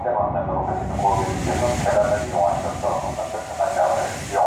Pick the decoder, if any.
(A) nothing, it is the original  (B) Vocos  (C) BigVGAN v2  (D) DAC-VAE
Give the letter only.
A